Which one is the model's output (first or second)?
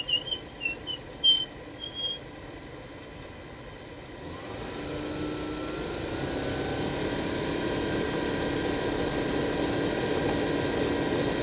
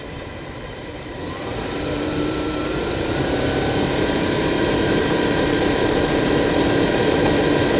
second